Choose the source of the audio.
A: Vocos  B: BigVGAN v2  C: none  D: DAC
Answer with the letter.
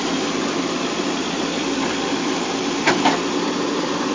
B